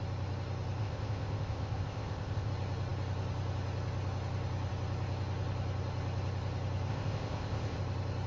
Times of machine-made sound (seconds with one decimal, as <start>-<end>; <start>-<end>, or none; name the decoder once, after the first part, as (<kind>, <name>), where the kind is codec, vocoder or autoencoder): 0.8-2.5 (codec, ZipCodec); 6.9-7.8